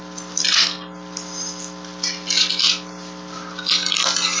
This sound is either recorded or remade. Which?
recorded